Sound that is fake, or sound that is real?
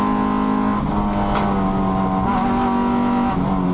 real